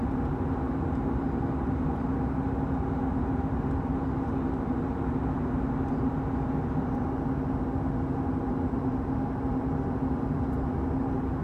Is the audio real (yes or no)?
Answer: yes